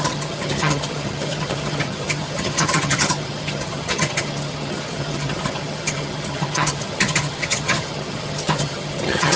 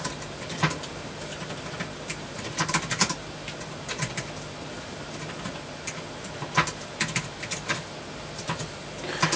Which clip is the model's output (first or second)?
first